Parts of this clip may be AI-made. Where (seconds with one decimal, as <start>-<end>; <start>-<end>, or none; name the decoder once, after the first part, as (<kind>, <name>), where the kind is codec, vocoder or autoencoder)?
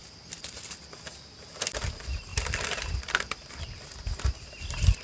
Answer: 0.0-0.6 (vocoder, BigVGAN v2)